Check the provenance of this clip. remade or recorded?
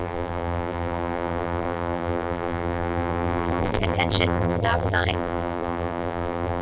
remade